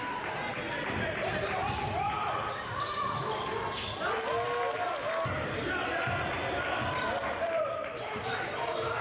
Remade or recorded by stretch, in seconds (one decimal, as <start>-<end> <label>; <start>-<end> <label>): 0.0-0.6 remade; 0.6-2.0 recorded; 2.0-3.2 remade; 3.2-5.9 recorded; 5.9-9.0 remade